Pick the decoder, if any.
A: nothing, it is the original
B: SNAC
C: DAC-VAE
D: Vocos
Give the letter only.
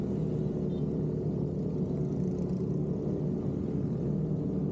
A